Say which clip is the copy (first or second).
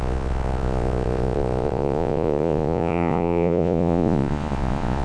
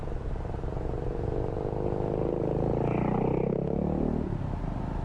first